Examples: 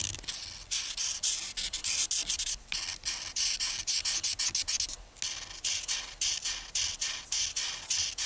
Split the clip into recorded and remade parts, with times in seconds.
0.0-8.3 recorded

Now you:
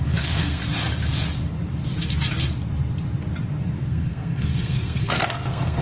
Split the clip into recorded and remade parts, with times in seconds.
0.0-0.6 remade; 0.6-3.8 recorded; 3.8-5.8 remade

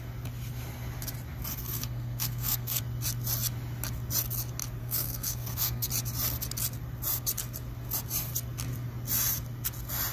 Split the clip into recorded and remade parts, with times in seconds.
0.0-1.5 recorded; 1.5-2.8 remade; 2.8-4.8 recorded; 4.8-5.9 remade; 5.9-10.1 recorded

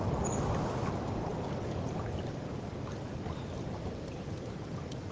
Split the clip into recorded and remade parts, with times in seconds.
0.0-5.1 recorded

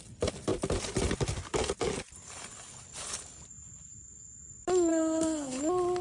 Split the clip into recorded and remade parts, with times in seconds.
0.0-4.9 recorded; 4.9-5.6 remade; 5.6-6.0 recorded

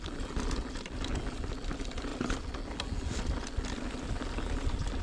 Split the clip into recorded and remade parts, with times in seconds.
0.0-5.0 recorded